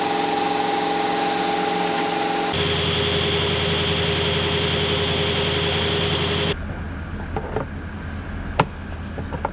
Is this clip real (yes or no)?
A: yes